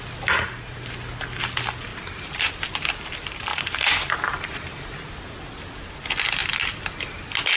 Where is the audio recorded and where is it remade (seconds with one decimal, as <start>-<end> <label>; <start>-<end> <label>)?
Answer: 0.0-1.9 recorded; 1.9-2.5 remade; 2.5-3.5 recorded; 3.5-4.8 remade; 4.8-7.6 recorded